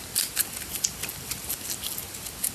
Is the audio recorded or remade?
recorded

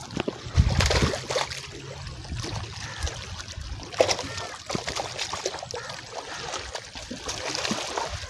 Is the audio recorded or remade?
recorded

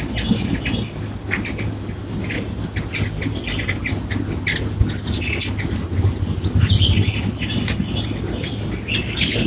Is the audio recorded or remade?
recorded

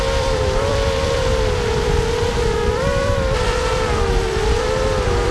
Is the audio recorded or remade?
remade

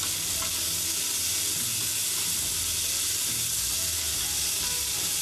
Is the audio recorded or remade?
recorded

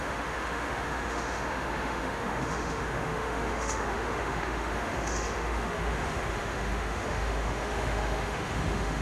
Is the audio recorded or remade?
remade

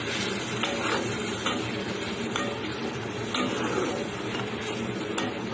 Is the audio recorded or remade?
recorded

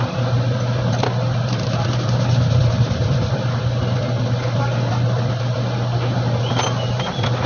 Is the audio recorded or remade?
recorded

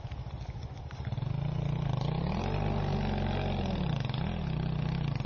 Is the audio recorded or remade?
recorded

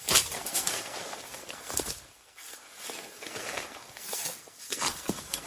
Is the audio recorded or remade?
remade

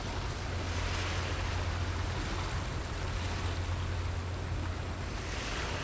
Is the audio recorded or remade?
recorded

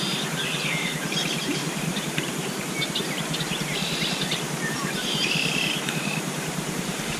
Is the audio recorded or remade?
remade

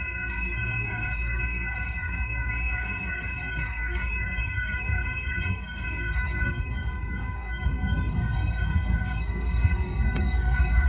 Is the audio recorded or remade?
remade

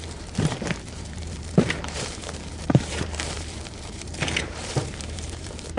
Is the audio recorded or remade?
remade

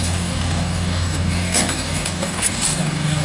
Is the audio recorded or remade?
remade